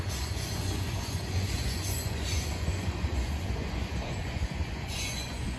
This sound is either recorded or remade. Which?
remade